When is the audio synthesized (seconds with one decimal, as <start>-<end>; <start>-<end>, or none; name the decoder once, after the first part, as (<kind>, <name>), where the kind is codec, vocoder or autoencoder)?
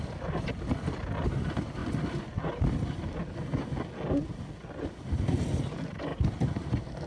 6.1-7.1 (vocoder, BigVGAN v2)